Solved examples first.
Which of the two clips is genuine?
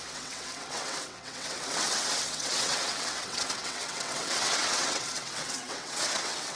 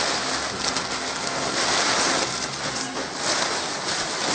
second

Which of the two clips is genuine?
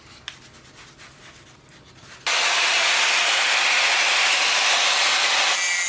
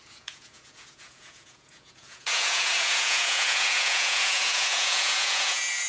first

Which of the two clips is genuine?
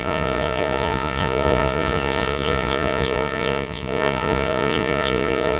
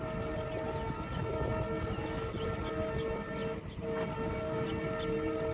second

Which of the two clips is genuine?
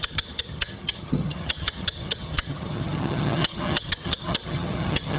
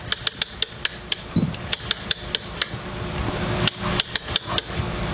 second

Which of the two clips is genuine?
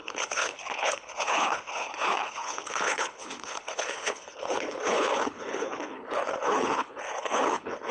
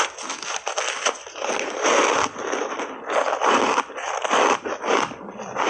second